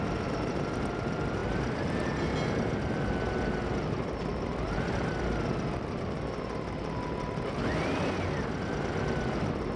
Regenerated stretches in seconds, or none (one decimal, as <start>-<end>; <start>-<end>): none